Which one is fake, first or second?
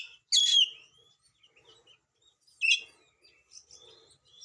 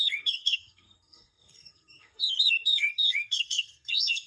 second